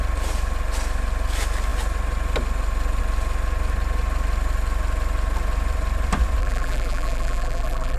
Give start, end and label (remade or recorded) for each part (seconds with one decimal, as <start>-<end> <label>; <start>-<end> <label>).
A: 0.0-6.4 recorded; 6.4-8.0 remade